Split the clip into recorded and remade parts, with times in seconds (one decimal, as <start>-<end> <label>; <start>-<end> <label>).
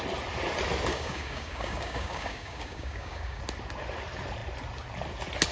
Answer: 0.0-0.9 recorded; 0.9-3.4 remade; 3.4-5.5 recorded